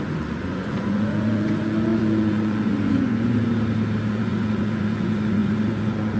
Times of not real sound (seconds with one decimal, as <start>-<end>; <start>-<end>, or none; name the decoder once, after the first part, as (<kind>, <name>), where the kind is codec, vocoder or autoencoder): 0.0-3.5 (vocoder, Vocos); 4.1-6.2